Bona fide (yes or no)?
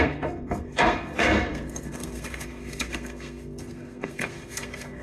no